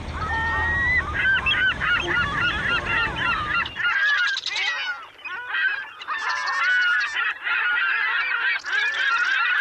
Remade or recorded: recorded